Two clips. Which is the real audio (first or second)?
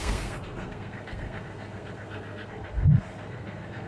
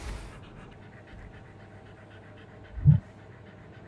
second